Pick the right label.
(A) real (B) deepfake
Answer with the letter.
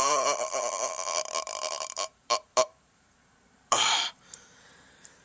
B